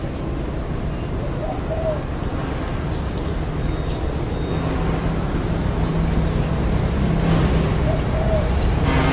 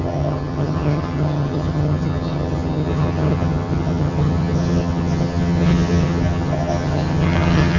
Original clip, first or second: first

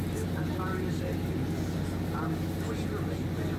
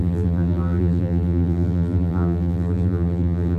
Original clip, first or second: first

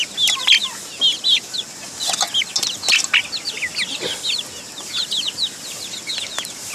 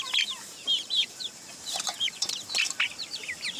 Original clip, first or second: first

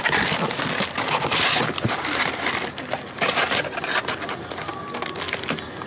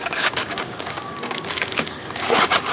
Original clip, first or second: first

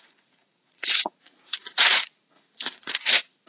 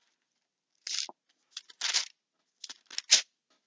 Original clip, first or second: second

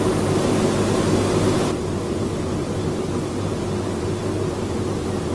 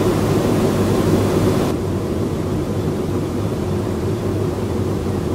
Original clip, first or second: first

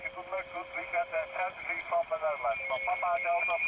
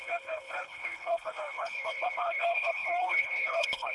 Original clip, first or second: first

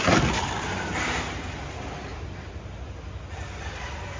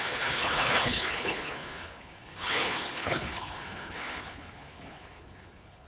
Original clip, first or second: first